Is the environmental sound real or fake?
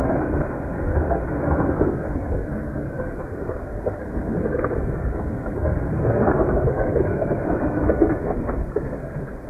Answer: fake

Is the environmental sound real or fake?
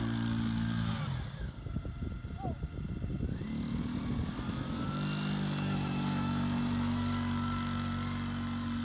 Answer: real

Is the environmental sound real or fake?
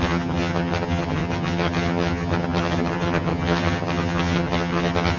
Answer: fake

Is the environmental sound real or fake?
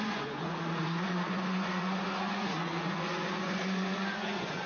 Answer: fake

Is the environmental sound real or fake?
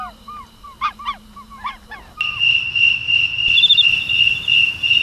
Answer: fake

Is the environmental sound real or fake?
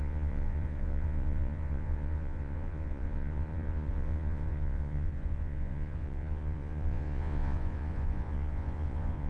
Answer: fake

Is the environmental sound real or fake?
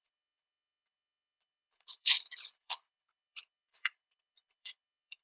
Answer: fake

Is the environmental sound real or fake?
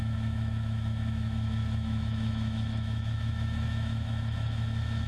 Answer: fake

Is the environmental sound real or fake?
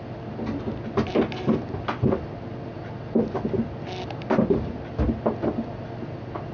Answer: real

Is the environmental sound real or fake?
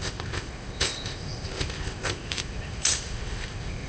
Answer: fake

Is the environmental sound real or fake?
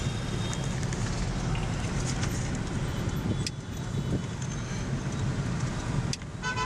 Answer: real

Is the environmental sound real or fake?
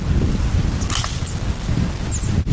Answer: real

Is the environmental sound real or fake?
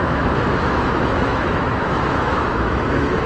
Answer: fake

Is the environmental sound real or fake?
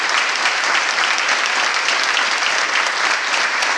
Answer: real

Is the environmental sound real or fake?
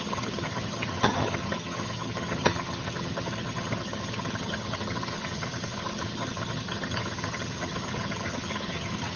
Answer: fake